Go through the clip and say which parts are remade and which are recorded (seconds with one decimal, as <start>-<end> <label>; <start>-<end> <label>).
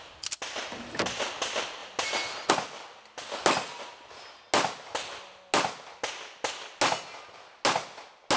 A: 0.0-8.4 recorded